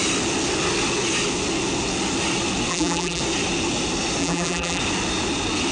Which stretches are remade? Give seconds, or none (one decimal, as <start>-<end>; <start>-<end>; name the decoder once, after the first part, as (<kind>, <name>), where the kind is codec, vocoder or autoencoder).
2.7-3.2 (vocoder, BigVGAN v2); 4.2-4.8